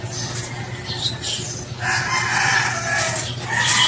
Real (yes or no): yes